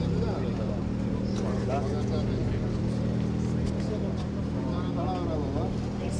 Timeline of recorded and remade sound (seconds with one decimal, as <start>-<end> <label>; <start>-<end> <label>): 0.0-6.2 recorded